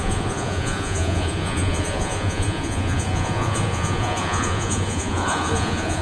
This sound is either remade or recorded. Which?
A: remade